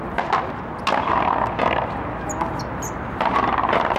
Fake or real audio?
real